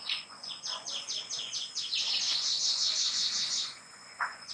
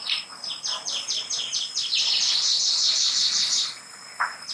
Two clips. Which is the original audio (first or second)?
second